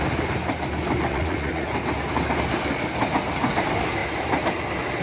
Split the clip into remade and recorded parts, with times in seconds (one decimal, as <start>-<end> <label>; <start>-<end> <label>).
0.0-1.1 recorded; 1.1-1.7 remade; 1.7-5.0 recorded